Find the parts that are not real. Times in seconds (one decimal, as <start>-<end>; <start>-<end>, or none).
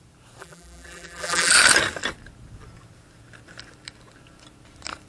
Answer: 0.4-1.5